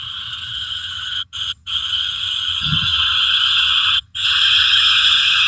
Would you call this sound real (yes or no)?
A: no